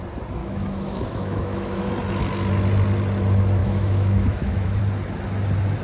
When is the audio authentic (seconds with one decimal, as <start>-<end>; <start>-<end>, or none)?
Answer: 0.0-0.4; 1.9-3.6; 4.8-5.8